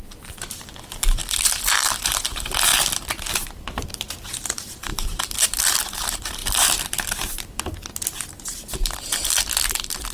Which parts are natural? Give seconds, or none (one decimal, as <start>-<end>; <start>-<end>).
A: 2.7-3.5